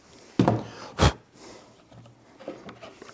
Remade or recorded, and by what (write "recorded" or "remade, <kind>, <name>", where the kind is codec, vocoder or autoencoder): recorded